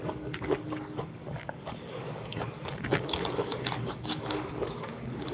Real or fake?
fake